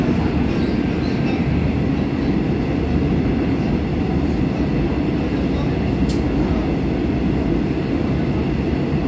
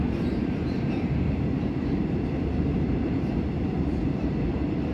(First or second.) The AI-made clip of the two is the second